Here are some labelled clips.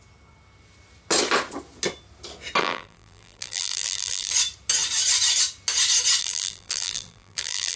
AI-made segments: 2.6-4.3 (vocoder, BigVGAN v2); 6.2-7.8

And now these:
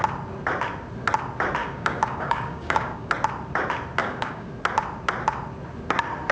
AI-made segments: 1.6-3.1 (codec, DAC); 4.0-4.5

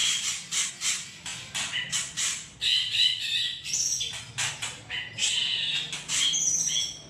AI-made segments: 0.0-0.7 (vocoder, BigVGAN v2); 1.3-4.5; 5.2-6.3

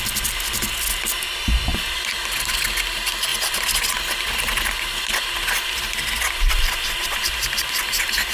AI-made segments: none

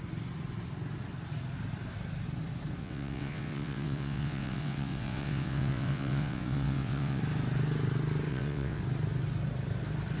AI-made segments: 2.8-7.2 (vocoder, WaveNeXt); 8.3-8.8

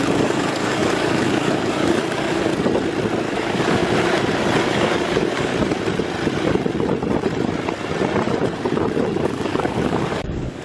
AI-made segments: 0.0-2.5 (codec, DAC); 3.3-3.8; 4.6-5.5; 9.2-10.6

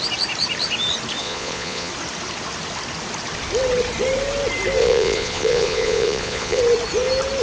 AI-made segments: 1.2-1.9 (vocoder, Vocos); 4.8-6.6